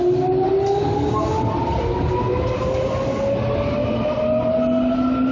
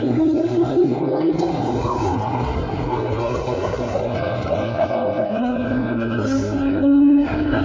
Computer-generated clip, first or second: second